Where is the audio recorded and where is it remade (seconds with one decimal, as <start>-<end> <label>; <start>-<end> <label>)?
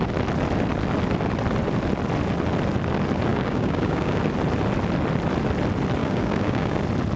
0.0-3.3 recorded; 3.3-4.2 remade; 4.2-6.0 recorded; 6.0-6.8 remade; 6.8-7.2 recorded